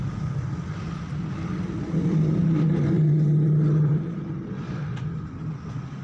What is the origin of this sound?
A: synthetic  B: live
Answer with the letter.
A